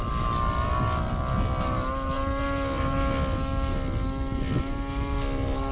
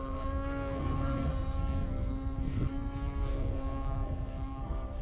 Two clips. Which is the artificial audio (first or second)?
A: second